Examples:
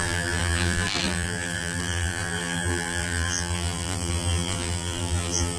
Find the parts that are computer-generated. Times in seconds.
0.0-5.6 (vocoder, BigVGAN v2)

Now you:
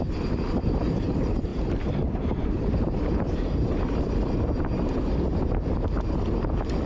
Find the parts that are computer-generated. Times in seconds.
1.5-4.1 (vocoder, BigVGAN v2)

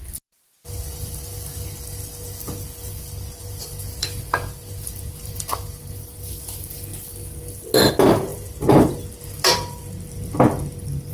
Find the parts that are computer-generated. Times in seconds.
0.0-6.9 (vocoder, BigVGAN v2); 7.9-11.1